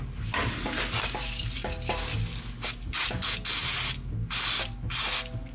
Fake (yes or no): no